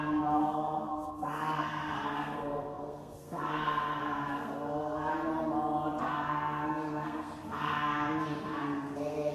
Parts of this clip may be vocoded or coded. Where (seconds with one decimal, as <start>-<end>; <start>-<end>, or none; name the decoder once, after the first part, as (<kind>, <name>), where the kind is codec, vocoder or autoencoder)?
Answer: 0.0-5.1 (codec, SNAC); 6.0-9.3